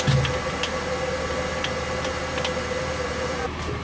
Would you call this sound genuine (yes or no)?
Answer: yes